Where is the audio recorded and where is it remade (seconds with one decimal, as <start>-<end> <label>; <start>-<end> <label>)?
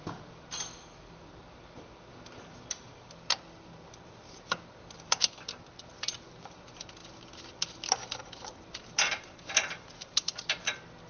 0.0-11.1 recorded